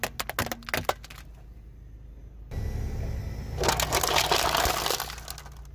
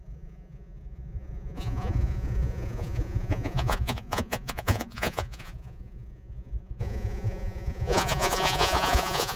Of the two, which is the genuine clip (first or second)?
first